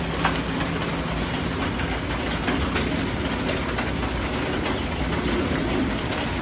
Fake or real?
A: real